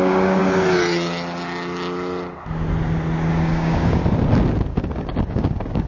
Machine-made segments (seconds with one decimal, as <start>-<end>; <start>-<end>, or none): 0.0-0.4; 3.3-4.0; 4.7-5.9